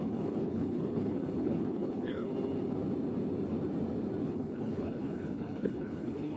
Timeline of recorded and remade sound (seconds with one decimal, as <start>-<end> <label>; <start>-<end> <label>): 0.0-2.3 remade; 2.3-4.2 recorded; 4.2-6.4 remade